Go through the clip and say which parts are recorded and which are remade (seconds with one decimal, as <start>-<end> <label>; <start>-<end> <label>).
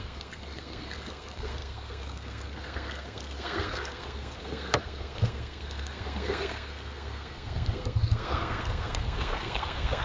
0.0-10.0 remade